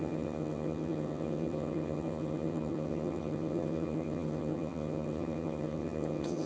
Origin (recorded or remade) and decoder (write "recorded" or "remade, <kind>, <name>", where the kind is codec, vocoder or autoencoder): remade, vocoder, HiFi-GAN